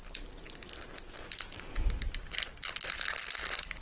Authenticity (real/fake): real